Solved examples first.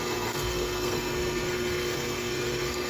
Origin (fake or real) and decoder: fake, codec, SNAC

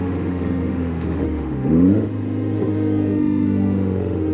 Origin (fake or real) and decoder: fake, autoencoder, DAC-VAE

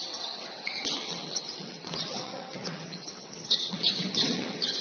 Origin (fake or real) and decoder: fake, vocoder, WaveNeXt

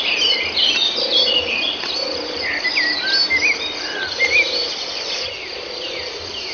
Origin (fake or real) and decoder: fake, vocoder, BigVGAN v2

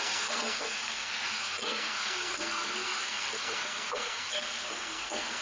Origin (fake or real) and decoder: fake, codec, SNAC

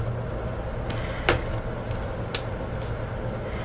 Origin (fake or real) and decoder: real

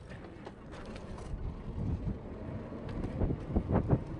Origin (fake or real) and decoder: real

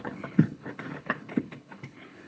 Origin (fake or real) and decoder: fake, codec, HILCodec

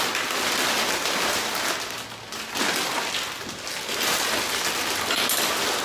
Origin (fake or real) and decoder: real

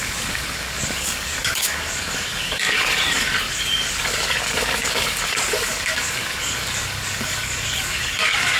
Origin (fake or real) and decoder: fake, codec, DAC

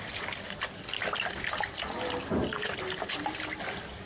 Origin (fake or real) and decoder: real